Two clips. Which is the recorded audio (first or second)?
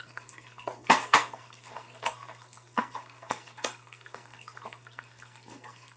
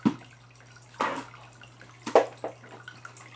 second